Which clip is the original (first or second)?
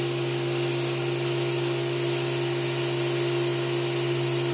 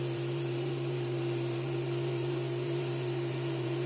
first